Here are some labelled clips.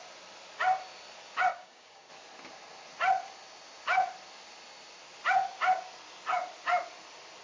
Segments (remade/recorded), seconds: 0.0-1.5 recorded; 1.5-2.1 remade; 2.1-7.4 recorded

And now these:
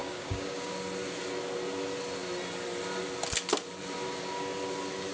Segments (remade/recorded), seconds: 0.0-0.7 remade; 0.7-5.1 recorded

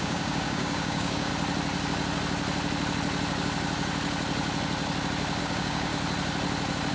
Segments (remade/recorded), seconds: 0.0-1.3 remade; 1.3-5.4 recorded; 5.4-5.9 remade; 5.9-6.9 recorded

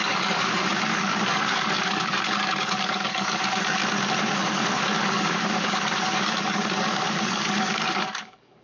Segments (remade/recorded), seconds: 0.0-3.8 remade; 3.8-4.3 recorded; 4.3-8.6 remade

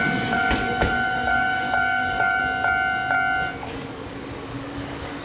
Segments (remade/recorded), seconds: 0.0-0.6 recorded; 0.6-2.4 remade; 2.4-3.6 recorded; 3.6-5.2 remade